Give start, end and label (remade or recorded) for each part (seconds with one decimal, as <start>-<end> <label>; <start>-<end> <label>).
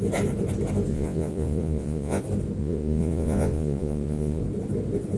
0.0-0.9 recorded; 0.9-2.2 remade; 2.2-2.6 recorded; 2.6-4.4 remade; 4.4-5.2 recorded